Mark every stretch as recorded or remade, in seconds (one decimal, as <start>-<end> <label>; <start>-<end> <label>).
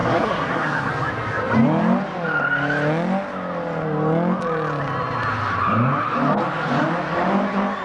0.0-0.9 remade; 0.9-7.8 recorded